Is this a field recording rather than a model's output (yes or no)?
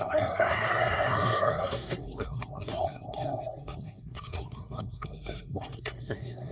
no